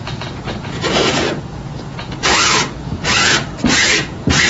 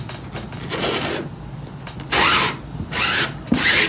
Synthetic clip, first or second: first